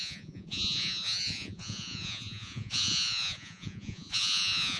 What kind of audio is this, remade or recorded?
remade